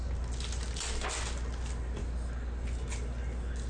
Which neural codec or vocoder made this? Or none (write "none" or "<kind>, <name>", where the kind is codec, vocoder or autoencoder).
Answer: none